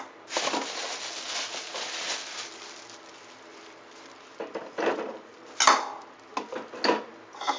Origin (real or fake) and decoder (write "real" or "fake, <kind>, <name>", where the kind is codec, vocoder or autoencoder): real